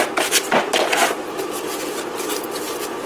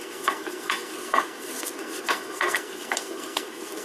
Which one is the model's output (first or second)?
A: second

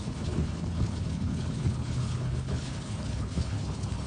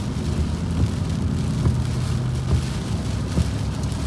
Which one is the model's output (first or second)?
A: first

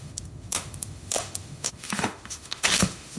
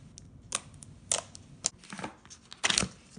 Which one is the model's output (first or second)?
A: first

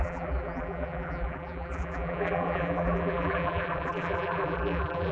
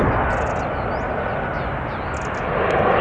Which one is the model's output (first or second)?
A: first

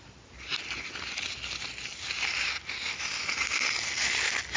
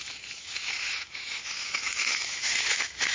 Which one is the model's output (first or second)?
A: second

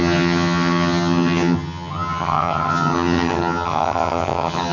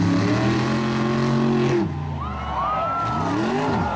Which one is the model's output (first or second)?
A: first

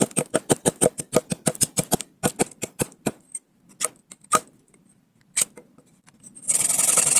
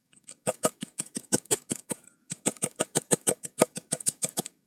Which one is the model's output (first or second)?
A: second